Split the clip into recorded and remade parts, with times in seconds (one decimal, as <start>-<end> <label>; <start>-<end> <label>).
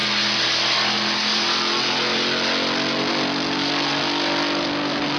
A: 0.0-5.2 recorded